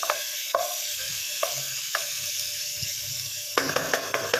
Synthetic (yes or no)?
yes